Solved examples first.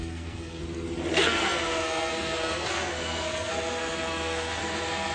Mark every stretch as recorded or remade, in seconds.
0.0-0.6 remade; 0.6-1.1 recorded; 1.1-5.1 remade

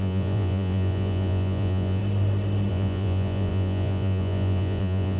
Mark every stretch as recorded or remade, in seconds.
0.0-2.0 remade; 2.0-2.7 recorded; 2.7-5.2 remade

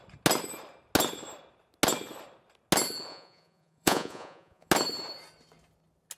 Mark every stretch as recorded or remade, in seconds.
0.0-3.1 recorded; 3.1-4.7 remade; 4.7-6.2 recorded

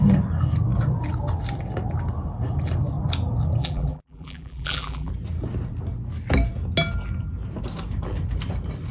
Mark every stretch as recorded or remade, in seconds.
0.0-3.6 recorded; 3.6-5.1 remade; 5.1-8.9 recorded